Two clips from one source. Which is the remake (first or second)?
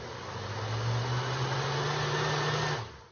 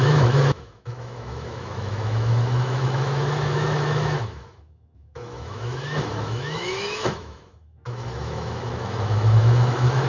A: second